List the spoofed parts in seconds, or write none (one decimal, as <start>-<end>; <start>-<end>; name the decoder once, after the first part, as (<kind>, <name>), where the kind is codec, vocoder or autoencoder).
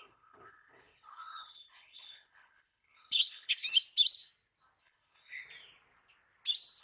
0.0-3.6 (codec, HILCodec); 4.8-5.4